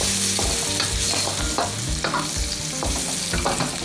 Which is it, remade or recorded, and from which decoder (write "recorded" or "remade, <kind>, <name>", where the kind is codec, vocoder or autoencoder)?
recorded